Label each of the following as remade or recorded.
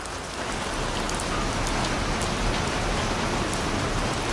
recorded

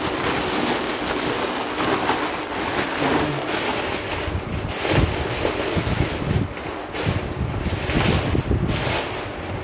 recorded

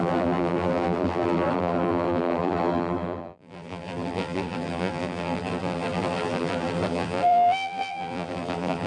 remade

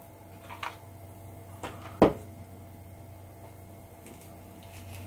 recorded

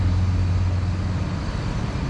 recorded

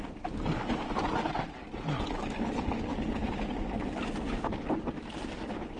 recorded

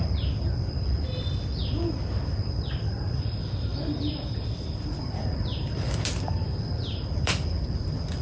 remade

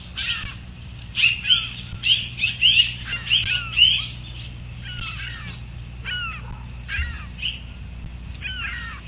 recorded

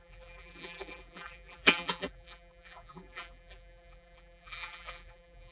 remade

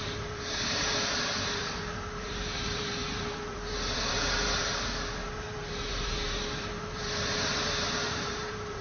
remade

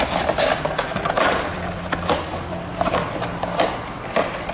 remade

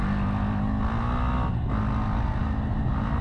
recorded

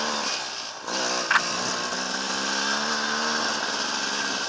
recorded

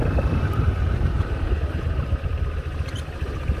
remade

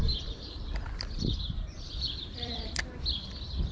remade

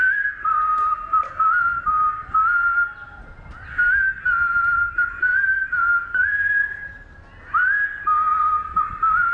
recorded